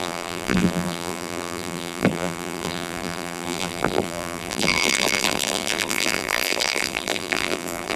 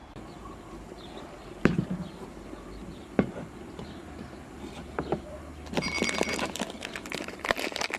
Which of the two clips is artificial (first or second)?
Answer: first